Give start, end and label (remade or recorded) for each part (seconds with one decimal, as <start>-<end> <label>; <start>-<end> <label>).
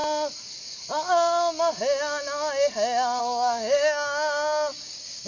0.0-3.2 recorded; 3.2-5.3 remade